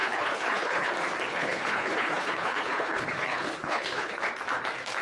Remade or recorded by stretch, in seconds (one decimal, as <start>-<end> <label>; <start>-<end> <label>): 0.0-0.9 remade; 0.9-1.3 recorded; 1.3-4.3 remade; 4.3-5.0 recorded